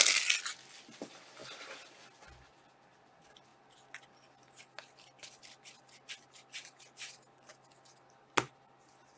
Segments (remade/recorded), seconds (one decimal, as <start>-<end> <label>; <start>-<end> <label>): 0.0-9.2 recorded